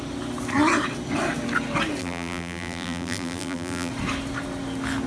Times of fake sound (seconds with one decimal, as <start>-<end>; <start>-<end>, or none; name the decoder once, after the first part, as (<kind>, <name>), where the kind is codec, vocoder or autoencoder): 2.0-3.9 (vocoder, BigVGAN v2)